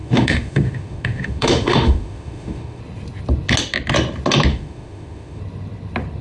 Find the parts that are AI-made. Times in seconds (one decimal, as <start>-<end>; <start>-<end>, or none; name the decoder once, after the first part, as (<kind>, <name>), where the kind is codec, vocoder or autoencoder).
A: 0.0-2.8 (autoencoder, DAC-VAE); 4.5-5.4